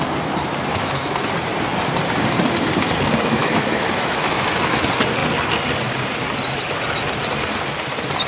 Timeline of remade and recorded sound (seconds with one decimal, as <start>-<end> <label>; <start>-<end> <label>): 0.0-0.7 recorded; 0.7-1.3 remade; 1.3-3.4 recorded; 3.4-4.8 remade; 4.8-8.3 recorded